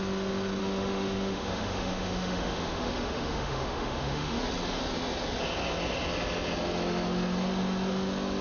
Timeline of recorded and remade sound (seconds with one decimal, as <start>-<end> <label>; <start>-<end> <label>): 0.0-0.6 recorded; 0.6-4.4 remade; 4.4-8.4 recorded